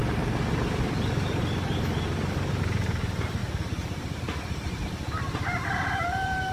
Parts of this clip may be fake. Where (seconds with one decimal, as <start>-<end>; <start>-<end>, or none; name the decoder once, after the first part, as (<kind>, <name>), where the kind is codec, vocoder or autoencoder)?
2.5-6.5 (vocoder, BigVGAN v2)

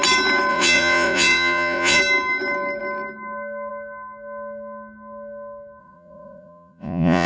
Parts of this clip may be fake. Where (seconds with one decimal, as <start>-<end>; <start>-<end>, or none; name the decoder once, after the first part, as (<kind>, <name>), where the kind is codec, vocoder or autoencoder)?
0.5-2.0 (vocoder, Vocos); 5.8-7.3

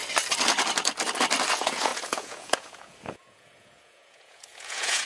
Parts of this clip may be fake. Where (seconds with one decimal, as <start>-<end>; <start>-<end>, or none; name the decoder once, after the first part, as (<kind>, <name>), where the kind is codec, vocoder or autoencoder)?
1.5-5.1 (vocoder, Vocos)

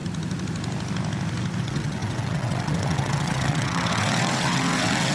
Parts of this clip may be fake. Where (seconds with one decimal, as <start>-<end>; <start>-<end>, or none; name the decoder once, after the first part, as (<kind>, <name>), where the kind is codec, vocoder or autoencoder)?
1.6-5.1 (vocoder, WaveNeXt)

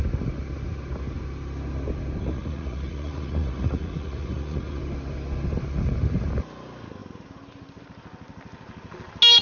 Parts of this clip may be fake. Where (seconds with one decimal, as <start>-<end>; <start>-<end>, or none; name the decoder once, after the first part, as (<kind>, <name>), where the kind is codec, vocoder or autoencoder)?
2.2-4.8 (vocoder, Vocos)

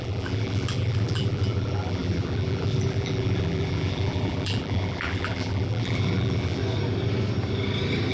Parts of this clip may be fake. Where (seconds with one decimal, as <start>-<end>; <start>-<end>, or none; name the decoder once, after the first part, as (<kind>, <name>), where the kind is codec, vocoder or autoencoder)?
0.0-6.6 (vocoder, BigVGAN v2)

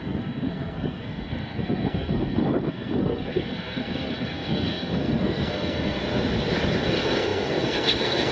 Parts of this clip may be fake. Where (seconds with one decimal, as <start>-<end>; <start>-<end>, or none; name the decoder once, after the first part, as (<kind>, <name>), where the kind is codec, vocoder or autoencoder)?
0.0-6.0 (codec, SNAC); 6.8-8.3